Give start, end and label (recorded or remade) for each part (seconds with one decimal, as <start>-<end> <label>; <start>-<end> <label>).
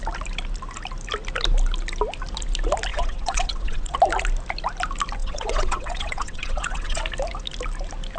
0.0-2.9 recorded; 2.9-3.9 remade; 3.9-5.2 recorded; 5.2-7.0 remade; 7.0-8.2 recorded